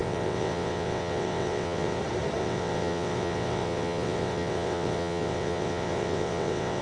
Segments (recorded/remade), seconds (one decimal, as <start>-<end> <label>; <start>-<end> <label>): 0.0-2.0 remade; 2.0-2.4 recorded; 2.4-6.8 remade